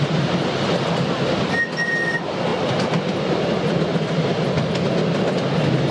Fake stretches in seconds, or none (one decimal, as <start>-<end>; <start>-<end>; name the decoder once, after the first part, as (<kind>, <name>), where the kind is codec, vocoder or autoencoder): 2.5-4.3 (vocoder, BigVGAN v2)